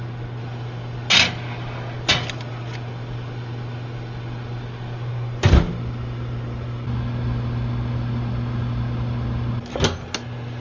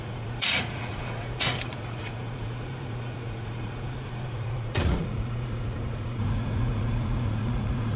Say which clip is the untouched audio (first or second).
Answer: first